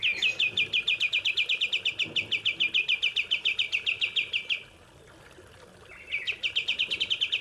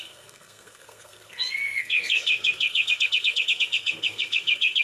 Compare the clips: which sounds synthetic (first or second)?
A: second